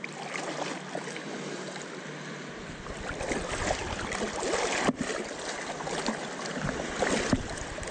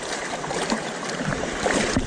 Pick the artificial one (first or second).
second